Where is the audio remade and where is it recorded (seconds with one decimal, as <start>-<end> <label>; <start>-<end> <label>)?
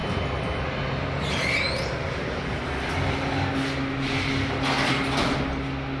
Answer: 0.0-6.0 recorded